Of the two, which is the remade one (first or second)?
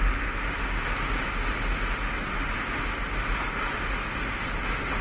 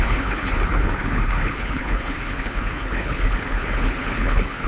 second